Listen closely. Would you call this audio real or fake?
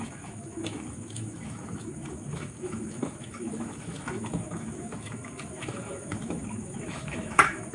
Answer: fake